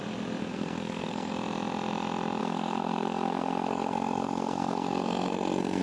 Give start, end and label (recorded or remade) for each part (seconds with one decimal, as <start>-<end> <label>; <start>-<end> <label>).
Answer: 0.0-0.4 recorded; 0.4-1.3 remade; 1.3-2.4 recorded; 2.4-5.8 remade